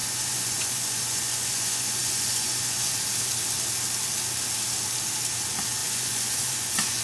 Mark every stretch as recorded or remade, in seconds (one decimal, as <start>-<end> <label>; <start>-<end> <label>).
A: 0.0-2.9 remade; 2.9-5.8 recorded; 5.8-7.0 remade